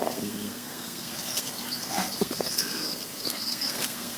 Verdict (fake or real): fake